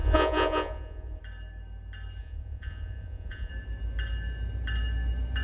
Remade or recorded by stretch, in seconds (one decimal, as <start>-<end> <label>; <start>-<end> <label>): 0.0-1.2 remade; 1.2-2.2 recorded; 2.2-3.5 remade; 3.5-5.4 recorded